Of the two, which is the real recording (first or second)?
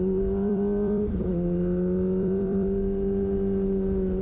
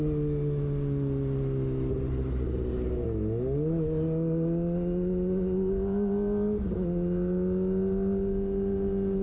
second